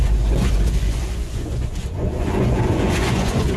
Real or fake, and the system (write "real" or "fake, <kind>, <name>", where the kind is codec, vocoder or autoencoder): fake, vocoder, Vocos